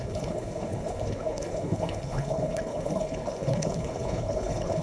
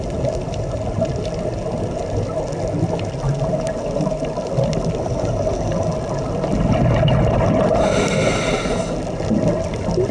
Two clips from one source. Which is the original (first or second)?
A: second